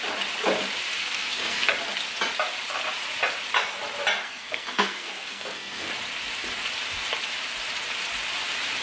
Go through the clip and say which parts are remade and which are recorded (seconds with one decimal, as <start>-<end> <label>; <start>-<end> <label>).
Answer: 0.0-1.0 recorded; 1.0-1.7 remade; 1.7-4.2 recorded; 4.2-5.9 remade; 5.9-8.8 recorded

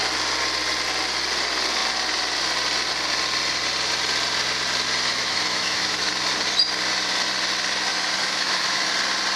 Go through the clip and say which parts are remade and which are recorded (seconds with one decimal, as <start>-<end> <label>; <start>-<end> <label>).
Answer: 0.0-5.1 recorded; 5.1-6.1 remade; 6.1-7.9 recorded; 7.9-8.9 remade; 8.9-9.4 recorded

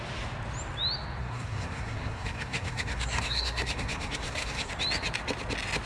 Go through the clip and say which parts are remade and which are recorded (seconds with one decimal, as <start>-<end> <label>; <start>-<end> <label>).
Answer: 0.0-1.2 recorded; 1.2-4.7 remade; 4.7-5.9 recorded

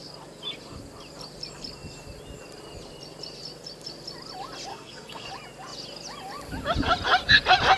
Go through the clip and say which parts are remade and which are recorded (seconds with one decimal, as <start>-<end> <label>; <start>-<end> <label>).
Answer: 0.0-4.7 recorded; 4.7-5.3 remade; 5.3-7.8 recorded

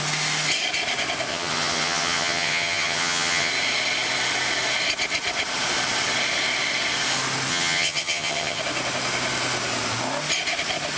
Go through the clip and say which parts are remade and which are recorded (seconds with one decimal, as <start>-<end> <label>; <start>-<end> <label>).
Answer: 0.0-1.3 recorded; 1.3-3.5 remade; 3.5-7.5 recorded; 7.5-8.6 remade; 8.6-11.0 recorded

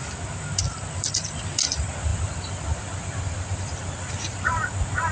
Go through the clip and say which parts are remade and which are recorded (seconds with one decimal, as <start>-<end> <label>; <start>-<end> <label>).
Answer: 0.0-2.1 recorded; 2.1-4.6 remade; 4.6-5.1 recorded

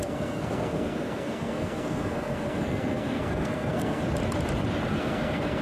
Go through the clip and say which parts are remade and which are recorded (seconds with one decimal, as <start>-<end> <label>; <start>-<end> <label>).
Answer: 0.0-4.0 remade; 4.0-4.9 recorded; 4.9-5.6 remade